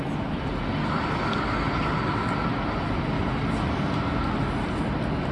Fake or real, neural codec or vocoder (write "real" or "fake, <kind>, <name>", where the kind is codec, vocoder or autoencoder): real